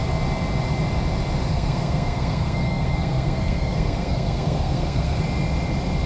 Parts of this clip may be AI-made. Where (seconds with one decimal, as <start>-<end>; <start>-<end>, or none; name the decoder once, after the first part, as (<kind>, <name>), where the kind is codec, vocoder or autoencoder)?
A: 1.5-5.2 (codec, SNAC)